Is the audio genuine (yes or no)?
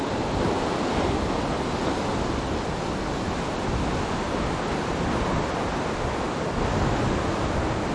yes